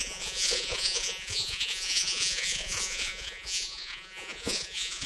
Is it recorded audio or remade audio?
remade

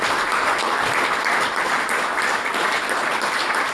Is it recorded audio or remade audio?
recorded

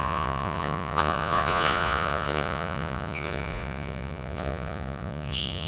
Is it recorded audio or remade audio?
remade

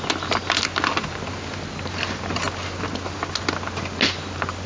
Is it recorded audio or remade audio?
recorded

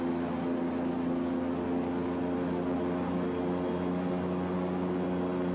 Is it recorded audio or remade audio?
recorded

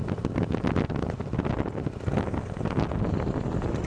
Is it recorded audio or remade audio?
recorded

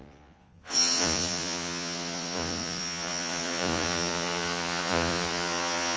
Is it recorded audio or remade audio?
remade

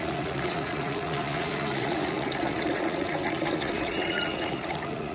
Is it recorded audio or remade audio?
remade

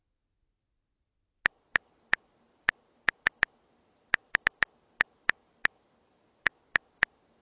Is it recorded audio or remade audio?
recorded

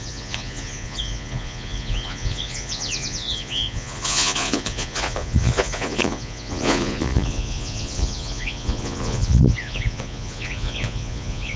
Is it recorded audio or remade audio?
remade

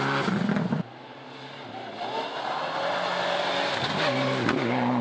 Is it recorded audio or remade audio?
recorded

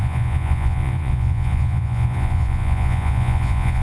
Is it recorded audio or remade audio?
remade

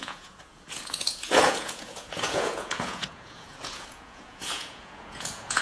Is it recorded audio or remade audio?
remade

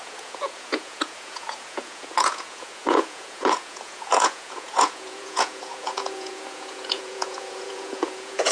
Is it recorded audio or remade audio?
remade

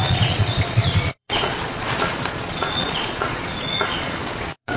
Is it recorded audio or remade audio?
remade